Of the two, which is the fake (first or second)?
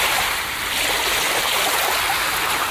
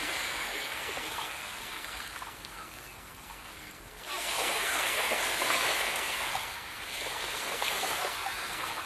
second